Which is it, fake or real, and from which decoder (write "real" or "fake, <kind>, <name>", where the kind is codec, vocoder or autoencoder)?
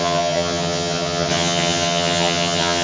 fake, vocoder, HiFi-GAN